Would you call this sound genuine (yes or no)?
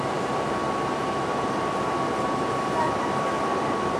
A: no